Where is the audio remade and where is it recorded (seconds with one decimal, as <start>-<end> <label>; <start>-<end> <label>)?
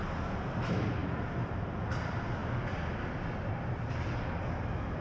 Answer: 0.0-5.0 recorded